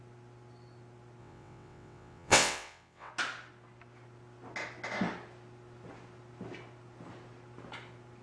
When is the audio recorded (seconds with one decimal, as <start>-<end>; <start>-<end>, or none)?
0.0-1.2; 3.1-8.2